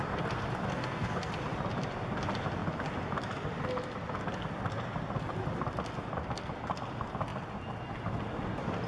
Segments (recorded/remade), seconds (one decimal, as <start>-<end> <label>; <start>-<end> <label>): 0.0-0.7 recorded; 0.7-1.3 remade; 1.3-8.9 recorded

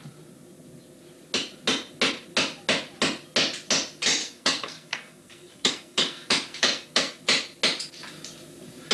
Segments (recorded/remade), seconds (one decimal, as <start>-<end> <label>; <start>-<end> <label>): 0.0-4.2 recorded; 4.2-7.2 remade; 7.2-8.9 recorded

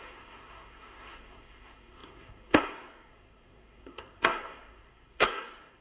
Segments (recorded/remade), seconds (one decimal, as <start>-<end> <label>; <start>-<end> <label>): 0.0-5.8 remade

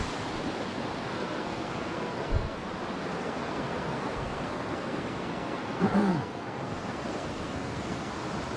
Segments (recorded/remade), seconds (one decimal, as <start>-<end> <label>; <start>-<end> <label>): 0.0-1.1 recorded; 1.1-2.7 remade; 2.7-3.2 recorded; 3.2-8.1 remade; 8.1-8.6 recorded